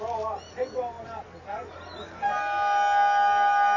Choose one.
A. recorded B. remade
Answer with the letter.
A